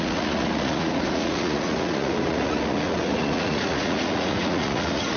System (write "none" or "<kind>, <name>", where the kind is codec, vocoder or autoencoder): vocoder, Vocos